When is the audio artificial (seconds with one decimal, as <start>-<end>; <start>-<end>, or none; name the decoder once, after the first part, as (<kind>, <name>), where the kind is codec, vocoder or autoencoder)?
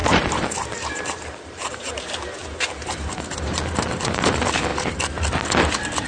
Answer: 0.0-1.9 (vocoder, BigVGAN v2); 2.4-3.0